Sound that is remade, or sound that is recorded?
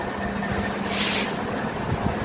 recorded